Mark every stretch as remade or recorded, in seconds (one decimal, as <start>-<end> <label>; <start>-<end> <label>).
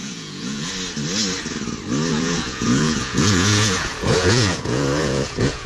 0.0-0.7 remade; 0.7-2.1 recorded; 2.1-5.7 remade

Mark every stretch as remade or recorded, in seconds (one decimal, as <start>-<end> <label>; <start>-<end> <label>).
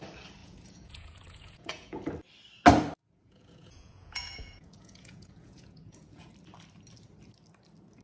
0.0-0.4 recorded; 0.4-2.1 remade; 2.1-3.0 recorded; 3.0-6.3 remade; 6.3-8.0 recorded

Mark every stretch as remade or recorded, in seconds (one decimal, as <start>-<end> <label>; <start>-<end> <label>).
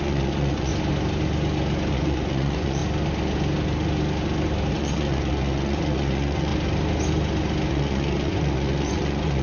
0.0-0.7 remade; 0.7-1.9 recorded; 1.9-2.8 remade; 2.8-4.7 recorded; 4.7-6.5 remade; 6.5-7.7 recorded; 7.7-9.4 remade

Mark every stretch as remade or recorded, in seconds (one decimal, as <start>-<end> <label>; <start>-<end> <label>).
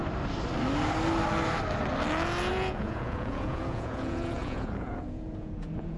0.0-2.5 recorded; 2.5-6.0 remade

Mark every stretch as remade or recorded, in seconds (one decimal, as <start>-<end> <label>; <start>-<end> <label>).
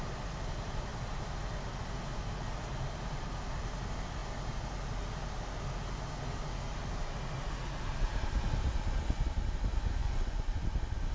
0.0-10.0 recorded; 10.0-10.6 remade; 10.6-11.1 recorded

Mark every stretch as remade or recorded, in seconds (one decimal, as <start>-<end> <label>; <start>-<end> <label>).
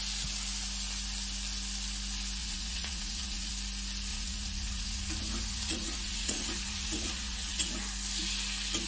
0.0-2.4 recorded; 2.4-3.5 remade; 3.5-4.1 recorded; 4.1-7.7 remade; 7.7-8.9 recorded